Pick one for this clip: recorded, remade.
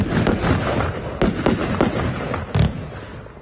recorded